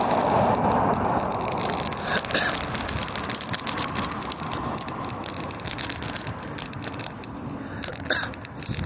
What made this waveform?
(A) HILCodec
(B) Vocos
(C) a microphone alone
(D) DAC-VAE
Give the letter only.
C